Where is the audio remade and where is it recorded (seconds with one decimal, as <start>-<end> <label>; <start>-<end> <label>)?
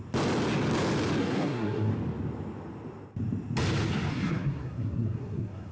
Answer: 0.0-1.2 recorded; 1.2-1.9 remade; 1.9-4.1 recorded; 4.1-5.7 remade